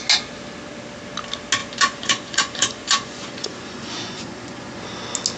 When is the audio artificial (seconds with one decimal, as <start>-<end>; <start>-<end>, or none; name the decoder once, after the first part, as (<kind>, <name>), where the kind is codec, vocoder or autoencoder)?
1.6-4.8 (vocoder, Vocos)